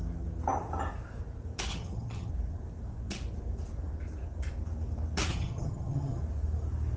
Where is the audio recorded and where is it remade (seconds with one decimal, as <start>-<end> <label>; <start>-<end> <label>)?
0.0-1.7 recorded; 1.7-2.3 remade; 2.3-5.3 recorded; 5.3-6.2 remade; 6.2-7.0 recorded